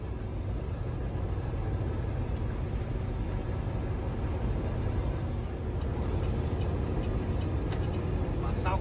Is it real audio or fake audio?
real